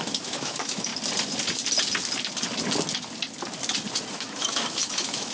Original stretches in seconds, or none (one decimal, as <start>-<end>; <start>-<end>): 0.9-4.1